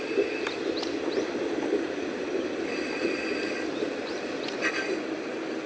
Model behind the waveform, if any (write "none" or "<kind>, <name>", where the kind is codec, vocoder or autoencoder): vocoder, BigVGAN v2